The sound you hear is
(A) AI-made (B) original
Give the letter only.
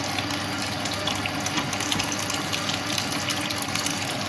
B